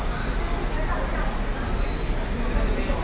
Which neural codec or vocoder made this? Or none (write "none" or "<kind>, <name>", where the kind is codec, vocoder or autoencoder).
none